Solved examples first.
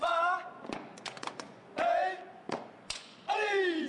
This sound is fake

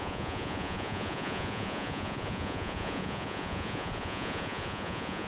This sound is fake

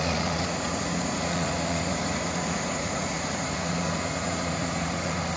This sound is fake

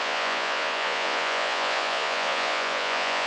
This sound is fake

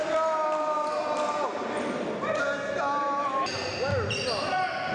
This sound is real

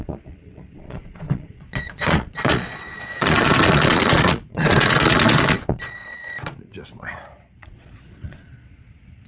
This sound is fake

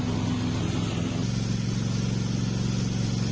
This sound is real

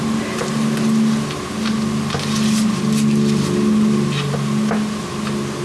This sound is real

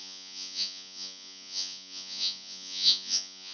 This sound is fake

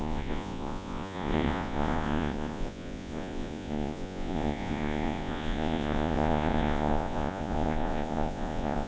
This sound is fake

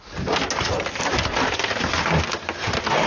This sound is real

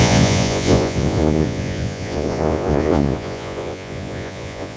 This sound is fake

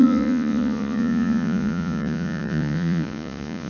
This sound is fake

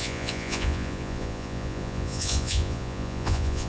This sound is fake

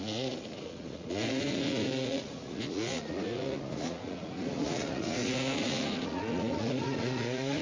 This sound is fake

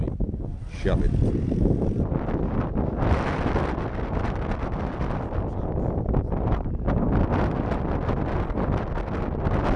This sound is real